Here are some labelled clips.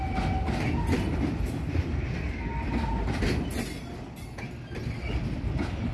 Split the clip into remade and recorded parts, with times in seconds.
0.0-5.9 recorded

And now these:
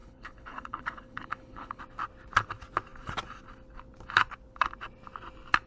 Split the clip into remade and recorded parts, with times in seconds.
0.0-1.8 remade; 1.8-5.7 recorded

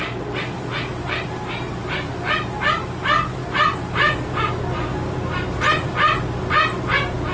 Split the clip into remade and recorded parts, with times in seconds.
0.0-7.3 recorded